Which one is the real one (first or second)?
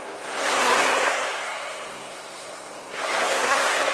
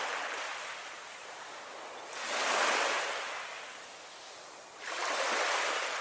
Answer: second